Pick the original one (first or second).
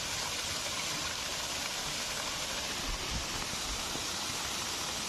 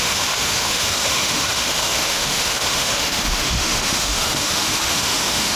first